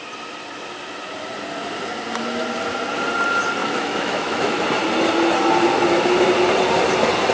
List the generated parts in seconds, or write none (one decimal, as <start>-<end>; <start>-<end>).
3.6-4.6